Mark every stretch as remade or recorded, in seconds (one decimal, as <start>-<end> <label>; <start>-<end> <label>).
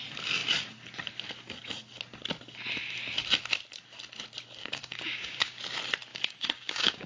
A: 0.0-4.6 recorded; 4.6-5.6 remade; 5.6-6.1 recorded; 6.1-7.1 remade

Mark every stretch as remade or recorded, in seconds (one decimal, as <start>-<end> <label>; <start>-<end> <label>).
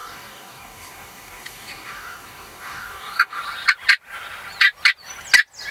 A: 0.0-3.4 remade; 3.4-5.7 recorded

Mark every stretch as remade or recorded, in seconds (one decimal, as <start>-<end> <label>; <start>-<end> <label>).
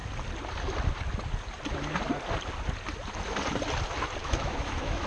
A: 0.0-4.2 recorded; 4.2-5.1 remade